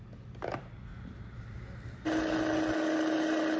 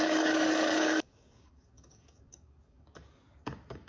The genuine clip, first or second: first